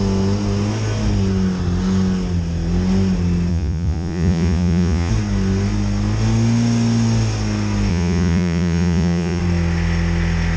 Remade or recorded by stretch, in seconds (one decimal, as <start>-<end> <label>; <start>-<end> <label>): 0.0-3.5 recorded; 3.5-5.1 remade; 5.1-7.9 recorded; 7.9-9.4 remade; 9.4-10.6 recorded